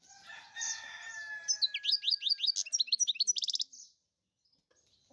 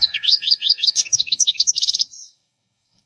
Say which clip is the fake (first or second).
second